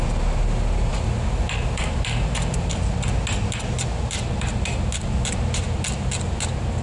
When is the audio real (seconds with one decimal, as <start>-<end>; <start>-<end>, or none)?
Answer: 0.0-0.9; 2.7-6.8